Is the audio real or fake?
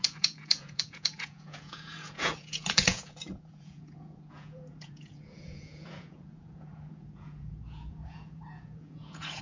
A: fake